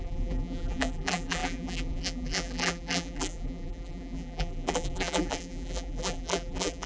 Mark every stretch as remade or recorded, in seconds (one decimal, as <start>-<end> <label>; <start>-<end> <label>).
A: 0.0-6.9 remade